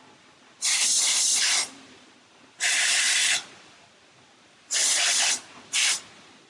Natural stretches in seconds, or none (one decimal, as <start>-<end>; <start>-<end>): 0.0-6.5